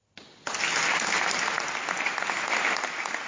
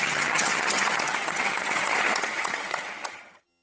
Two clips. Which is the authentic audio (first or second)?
first